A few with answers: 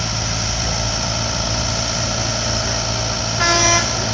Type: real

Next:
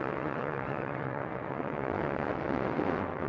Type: fake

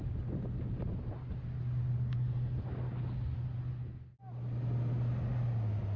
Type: real